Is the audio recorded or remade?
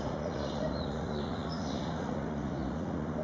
remade